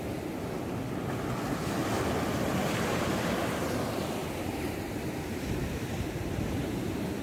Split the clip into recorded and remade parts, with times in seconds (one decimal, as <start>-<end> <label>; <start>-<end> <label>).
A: 0.0-2.5 recorded; 2.5-3.1 remade; 3.1-4.2 recorded; 4.2-7.2 remade

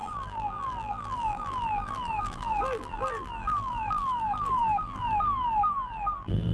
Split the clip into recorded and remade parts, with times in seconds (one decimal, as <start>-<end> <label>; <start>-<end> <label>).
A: 0.0-6.5 remade

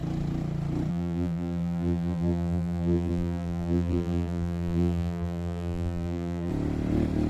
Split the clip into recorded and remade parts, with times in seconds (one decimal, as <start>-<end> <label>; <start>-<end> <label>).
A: 0.0-0.9 recorded; 0.9-6.5 remade; 6.5-7.3 recorded

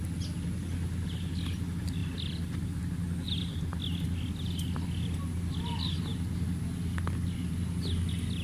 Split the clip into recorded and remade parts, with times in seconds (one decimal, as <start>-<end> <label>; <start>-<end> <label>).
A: 0.0-2.0 recorded; 2.0-2.8 remade; 2.8-6.1 recorded; 6.1-7.5 remade; 7.5-8.4 recorded

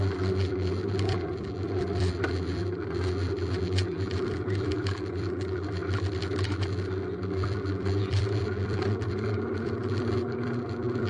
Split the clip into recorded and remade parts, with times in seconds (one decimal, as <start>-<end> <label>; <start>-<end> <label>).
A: 0.0-5.8 remade; 5.8-7.2 recorded; 7.2-11.1 remade

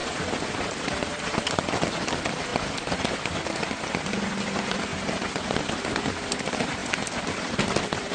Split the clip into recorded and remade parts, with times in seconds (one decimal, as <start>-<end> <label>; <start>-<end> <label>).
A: 0.0-2.5 remade; 2.5-3.6 recorded; 3.6-4.9 remade; 4.9-5.6 recorded; 5.6-8.1 remade

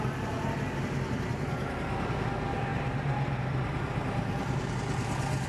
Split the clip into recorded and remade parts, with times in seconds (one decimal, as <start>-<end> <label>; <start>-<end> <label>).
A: 0.0-2.7 recorded; 2.7-4.7 remade; 4.7-5.5 recorded